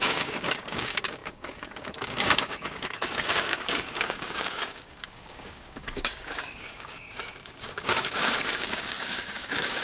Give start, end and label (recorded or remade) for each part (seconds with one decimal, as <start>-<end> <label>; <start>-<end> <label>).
0.0-9.8 remade